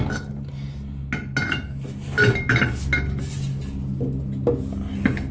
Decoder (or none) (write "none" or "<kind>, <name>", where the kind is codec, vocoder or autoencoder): none